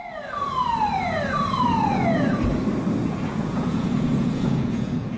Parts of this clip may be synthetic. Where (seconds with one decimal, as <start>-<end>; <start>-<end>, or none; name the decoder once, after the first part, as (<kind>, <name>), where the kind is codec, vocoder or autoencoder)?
3.1-5.2 (vocoder, Vocos)